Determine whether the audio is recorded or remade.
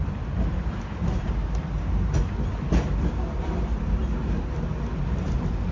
recorded